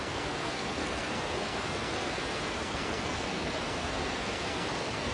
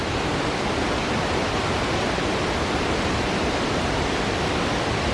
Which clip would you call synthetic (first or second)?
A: first